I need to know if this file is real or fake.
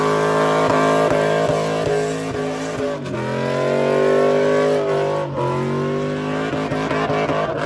real